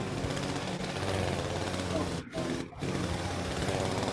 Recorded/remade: recorded